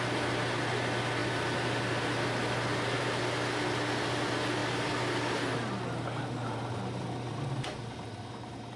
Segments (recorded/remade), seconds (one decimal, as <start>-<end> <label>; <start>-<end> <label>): 0.0-6.4 recorded; 6.4-8.8 remade